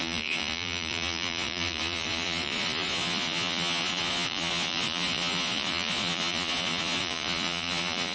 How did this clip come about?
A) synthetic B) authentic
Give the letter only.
A